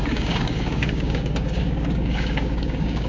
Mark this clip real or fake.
fake